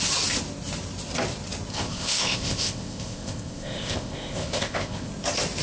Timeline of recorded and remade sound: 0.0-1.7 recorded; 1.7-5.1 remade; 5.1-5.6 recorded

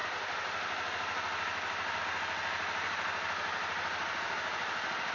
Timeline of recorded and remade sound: 0.0-5.1 recorded

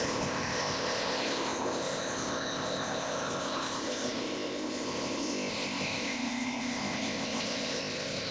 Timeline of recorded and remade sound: 0.0-8.3 remade

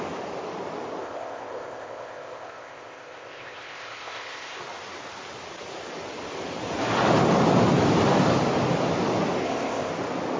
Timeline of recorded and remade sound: 0.0-1.0 recorded; 1.0-4.6 remade; 4.6-9.4 recorded; 9.4-9.9 remade; 9.9-10.4 recorded

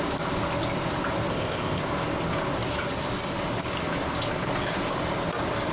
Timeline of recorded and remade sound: 0.0-1.3 recorded; 1.3-1.8 remade; 1.8-5.7 recorded

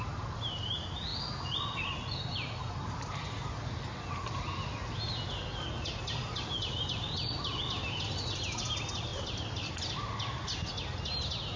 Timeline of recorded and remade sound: 0.0-11.6 recorded

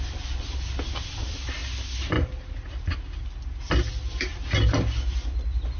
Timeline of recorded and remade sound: 0.0-5.8 recorded